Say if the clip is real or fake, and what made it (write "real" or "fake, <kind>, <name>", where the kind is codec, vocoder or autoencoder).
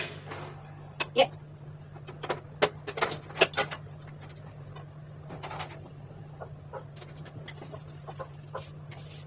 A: real